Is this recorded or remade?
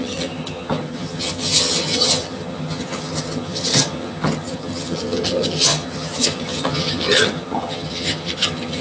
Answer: remade